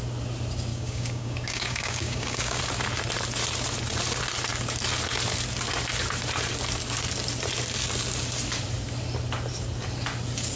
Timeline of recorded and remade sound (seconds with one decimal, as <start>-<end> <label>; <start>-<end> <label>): 0.0-0.7 recorded; 0.7-2.6 remade; 2.6-10.6 recorded